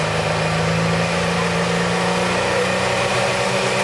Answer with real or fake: real